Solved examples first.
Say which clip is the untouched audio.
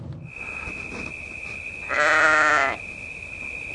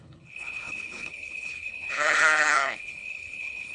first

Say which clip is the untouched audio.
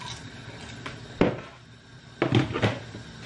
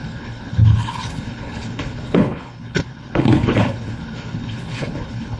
first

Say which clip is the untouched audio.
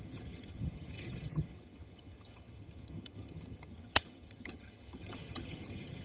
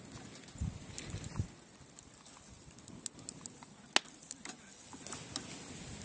second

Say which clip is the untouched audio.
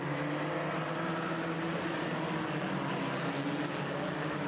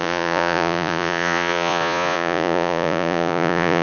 first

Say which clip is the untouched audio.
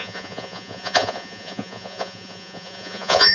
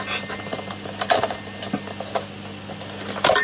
second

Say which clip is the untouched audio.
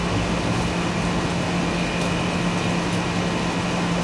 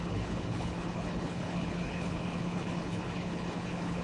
first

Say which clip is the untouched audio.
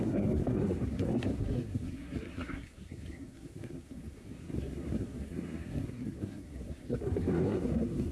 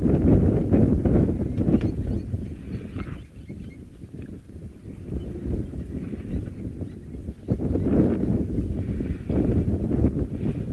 second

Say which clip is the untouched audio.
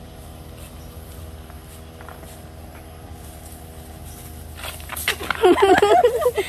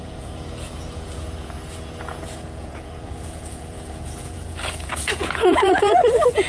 first